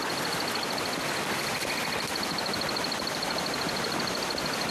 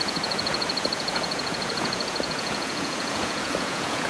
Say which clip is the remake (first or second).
second